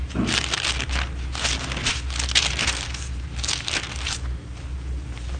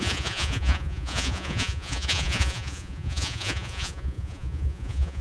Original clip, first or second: first